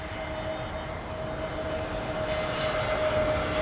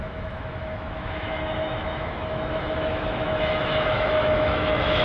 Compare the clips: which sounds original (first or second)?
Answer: first